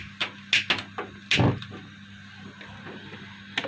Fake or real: real